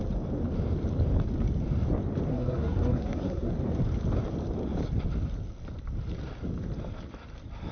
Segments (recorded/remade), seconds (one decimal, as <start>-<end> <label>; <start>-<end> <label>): 0.0-2.3 recorded; 2.3-3.5 remade; 3.5-7.7 recorded